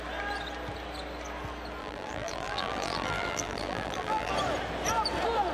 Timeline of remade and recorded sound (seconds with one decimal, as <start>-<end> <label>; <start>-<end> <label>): 0.0-1.8 recorded; 1.8-4.3 remade; 4.3-5.5 recorded